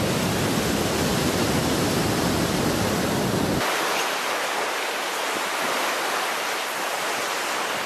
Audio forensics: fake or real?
real